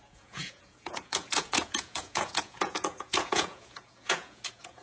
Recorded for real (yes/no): no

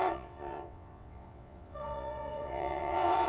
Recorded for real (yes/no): no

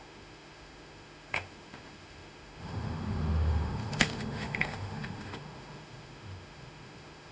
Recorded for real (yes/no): no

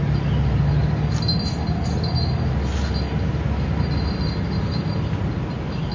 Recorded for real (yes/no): yes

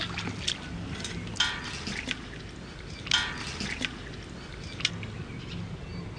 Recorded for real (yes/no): yes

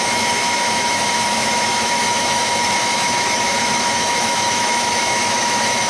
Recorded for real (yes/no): no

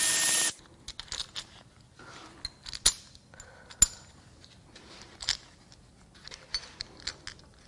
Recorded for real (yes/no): yes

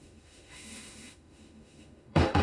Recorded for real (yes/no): no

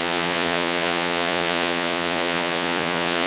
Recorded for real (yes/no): no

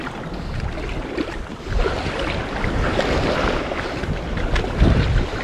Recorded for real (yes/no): yes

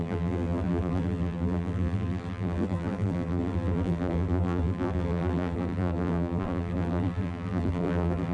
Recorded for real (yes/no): no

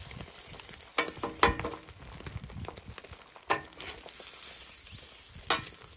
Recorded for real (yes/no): yes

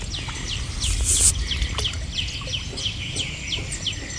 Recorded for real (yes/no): yes